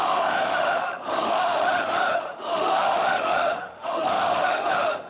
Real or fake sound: fake